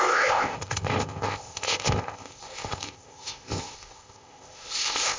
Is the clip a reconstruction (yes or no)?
yes